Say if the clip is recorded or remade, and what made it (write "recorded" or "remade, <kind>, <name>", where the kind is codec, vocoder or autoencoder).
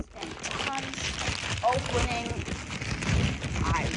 recorded